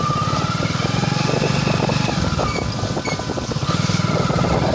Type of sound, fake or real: real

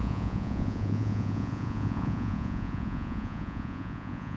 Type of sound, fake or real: fake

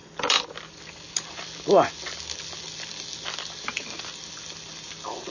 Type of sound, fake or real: real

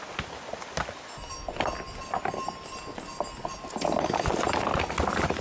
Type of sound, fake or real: real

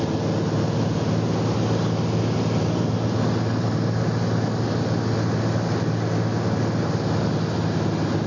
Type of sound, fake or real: real